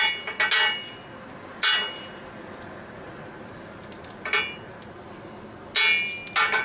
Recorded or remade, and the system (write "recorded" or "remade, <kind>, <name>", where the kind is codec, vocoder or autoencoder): recorded